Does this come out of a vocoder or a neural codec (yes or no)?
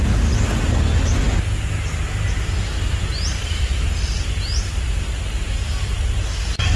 no